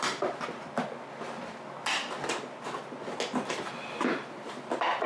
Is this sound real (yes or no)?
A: yes